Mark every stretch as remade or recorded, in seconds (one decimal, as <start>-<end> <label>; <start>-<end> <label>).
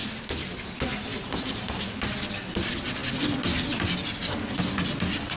0.0-1.1 recorded; 1.1-1.8 remade; 1.8-5.4 recorded